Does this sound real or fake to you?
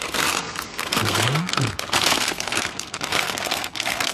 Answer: fake